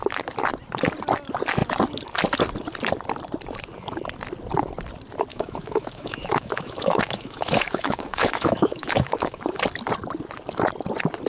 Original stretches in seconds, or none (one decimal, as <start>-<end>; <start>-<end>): 0.0-5.3; 9.6-11.3